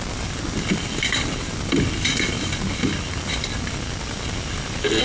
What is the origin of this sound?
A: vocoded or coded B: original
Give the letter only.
B